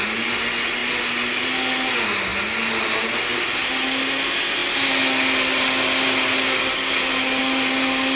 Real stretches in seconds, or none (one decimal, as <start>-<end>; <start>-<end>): 0.0-8.2